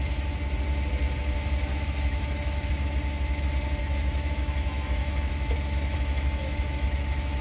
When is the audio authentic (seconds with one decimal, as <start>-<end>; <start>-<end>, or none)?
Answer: 0.0-1.7; 2.7-3.8